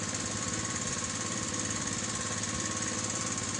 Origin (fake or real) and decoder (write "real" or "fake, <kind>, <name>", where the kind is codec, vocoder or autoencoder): fake, vocoder, BigVGAN v2